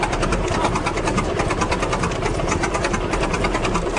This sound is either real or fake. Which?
fake